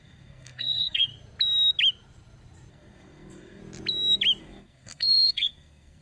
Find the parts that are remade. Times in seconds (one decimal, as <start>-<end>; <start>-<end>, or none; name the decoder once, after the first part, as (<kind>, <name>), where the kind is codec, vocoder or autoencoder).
0.0-1.1 (codec, SNAC); 2.7-3.6; 4.4-6.0